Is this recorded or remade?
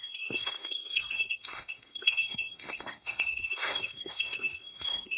remade